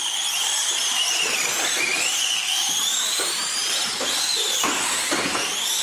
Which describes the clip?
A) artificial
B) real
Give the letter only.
A